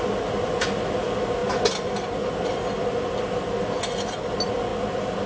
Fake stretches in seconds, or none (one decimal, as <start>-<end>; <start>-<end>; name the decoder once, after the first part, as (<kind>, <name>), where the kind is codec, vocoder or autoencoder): none